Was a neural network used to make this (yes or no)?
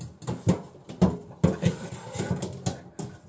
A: no